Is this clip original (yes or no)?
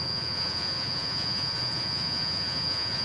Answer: no